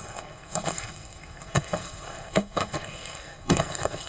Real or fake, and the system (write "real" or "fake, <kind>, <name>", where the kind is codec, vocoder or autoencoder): fake, codec, SNAC